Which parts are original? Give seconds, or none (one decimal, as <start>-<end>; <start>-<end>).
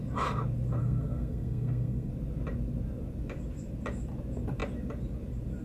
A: 0.0-0.8; 2.1-5.6